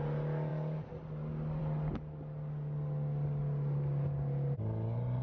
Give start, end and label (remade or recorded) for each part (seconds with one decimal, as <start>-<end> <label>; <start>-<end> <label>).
0.0-5.2 recorded